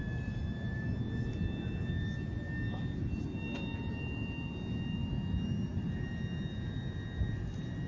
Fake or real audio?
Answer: real